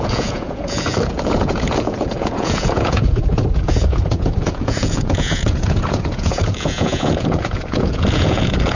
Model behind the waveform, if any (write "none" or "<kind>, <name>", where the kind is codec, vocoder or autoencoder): vocoder, Vocos